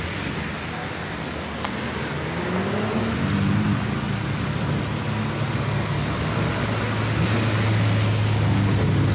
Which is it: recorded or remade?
recorded